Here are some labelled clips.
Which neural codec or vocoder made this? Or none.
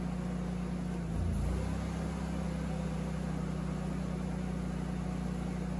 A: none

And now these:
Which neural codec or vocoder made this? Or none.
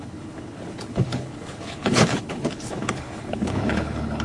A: codec, HILCodec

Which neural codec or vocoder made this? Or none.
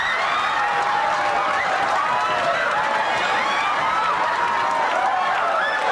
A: none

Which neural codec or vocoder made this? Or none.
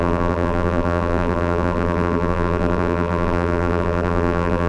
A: vocoder, BigVGAN v2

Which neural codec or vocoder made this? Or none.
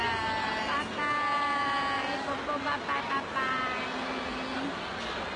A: none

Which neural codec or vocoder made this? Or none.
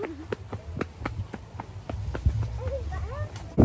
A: none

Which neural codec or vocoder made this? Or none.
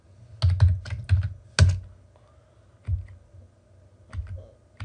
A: none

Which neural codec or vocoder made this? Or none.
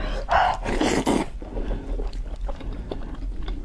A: none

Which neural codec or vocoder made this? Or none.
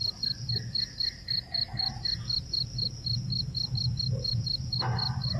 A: none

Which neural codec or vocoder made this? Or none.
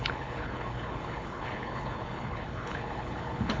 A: codec, HILCodec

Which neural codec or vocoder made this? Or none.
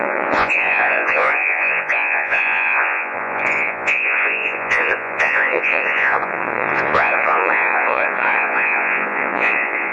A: vocoder, Vocos